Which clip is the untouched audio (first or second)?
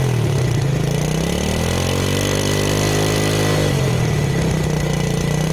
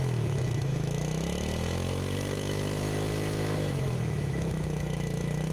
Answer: first